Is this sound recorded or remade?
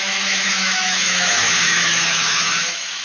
remade